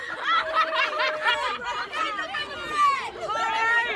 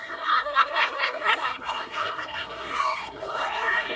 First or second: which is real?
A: first